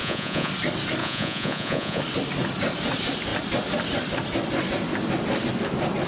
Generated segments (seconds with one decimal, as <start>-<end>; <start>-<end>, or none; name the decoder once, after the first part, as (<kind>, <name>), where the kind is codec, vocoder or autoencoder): 0.0-0.5 (vocoder, Vocos); 1.0-2.0